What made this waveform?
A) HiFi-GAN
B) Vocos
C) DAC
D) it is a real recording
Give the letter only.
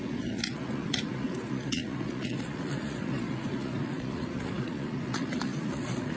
B